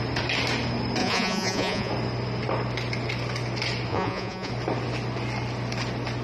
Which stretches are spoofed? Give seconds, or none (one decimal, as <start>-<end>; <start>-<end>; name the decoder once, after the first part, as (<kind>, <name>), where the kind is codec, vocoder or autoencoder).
1.0-1.9 (vocoder, Vocos); 3.9-4.5